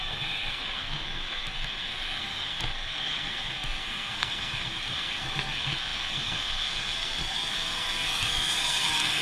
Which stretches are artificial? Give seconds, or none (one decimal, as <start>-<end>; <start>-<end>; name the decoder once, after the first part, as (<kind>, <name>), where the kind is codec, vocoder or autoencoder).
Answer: 0.0-9.2 (codec, SNAC)